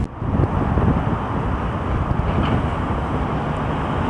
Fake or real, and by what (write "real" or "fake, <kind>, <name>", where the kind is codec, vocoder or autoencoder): real